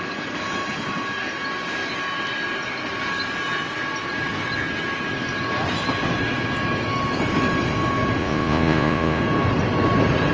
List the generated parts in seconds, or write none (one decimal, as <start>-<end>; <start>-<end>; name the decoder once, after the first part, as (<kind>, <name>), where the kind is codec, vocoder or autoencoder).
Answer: 8.2-9.2 (vocoder, Vocos)